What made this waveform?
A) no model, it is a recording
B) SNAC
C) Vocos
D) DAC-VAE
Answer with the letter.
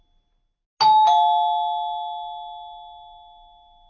A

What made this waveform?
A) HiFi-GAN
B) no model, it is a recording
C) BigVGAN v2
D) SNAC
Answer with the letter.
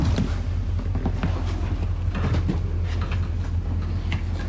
B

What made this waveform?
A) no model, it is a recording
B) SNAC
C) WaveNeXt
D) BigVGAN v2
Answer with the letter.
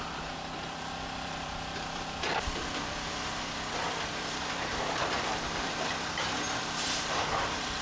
D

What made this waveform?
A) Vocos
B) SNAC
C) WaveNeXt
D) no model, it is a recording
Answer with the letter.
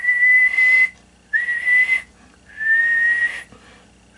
D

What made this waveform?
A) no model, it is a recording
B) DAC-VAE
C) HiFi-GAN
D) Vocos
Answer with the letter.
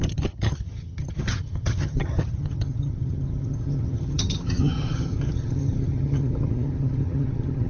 C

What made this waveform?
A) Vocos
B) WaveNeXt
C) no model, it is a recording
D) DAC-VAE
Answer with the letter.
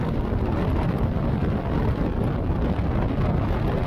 C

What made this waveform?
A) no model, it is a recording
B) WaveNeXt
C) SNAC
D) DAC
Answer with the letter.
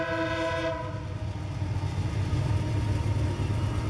A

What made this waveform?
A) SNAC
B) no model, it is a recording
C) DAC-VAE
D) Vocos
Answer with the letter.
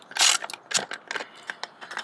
B